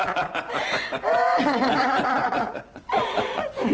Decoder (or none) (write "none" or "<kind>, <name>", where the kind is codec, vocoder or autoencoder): vocoder, Vocos